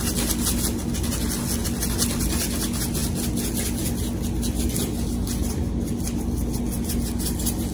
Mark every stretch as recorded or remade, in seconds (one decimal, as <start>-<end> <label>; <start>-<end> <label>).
0.0-7.7 recorded